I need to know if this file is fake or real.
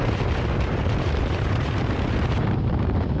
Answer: fake